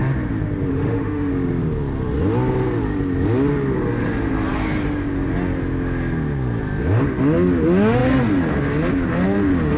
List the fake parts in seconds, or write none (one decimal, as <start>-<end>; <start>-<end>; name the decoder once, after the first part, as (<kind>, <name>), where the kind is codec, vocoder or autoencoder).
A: 0.7-1.3 (autoencoder, DAC-VAE)